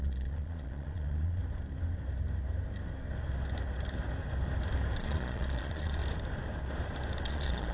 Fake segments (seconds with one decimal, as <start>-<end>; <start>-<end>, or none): 0.0-1.4; 5.0-6.0; 7.3-7.7